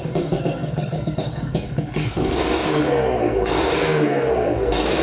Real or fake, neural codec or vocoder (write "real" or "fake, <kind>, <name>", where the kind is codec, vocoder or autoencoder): fake, codec, SNAC